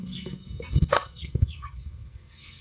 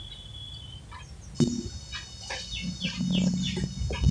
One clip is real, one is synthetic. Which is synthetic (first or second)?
first